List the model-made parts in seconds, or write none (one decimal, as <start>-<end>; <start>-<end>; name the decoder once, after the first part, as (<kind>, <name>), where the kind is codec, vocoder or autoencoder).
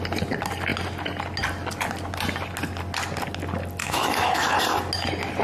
3.8-4.5 (autoencoder, DAC-VAE)